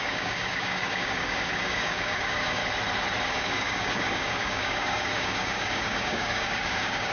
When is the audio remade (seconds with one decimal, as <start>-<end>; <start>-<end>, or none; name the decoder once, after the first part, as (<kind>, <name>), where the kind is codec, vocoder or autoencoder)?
0.0-2.6 (codec, DAC); 3.3-7.1